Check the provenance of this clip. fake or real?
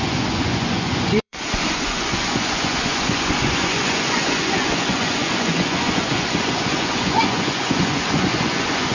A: fake